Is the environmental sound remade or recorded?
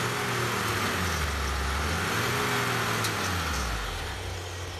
recorded